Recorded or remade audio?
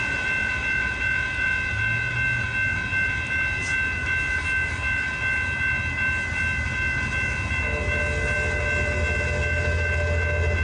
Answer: recorded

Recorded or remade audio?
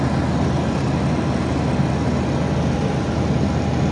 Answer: recorded